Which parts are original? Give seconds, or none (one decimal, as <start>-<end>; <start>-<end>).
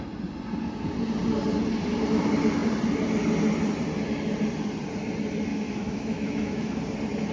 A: 0.0-5.5; 6.8-7.3